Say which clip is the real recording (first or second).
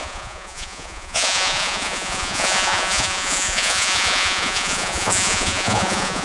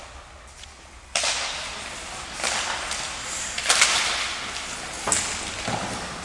second